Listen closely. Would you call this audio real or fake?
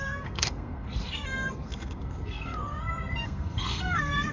fake